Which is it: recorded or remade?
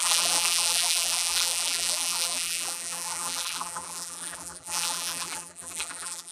remade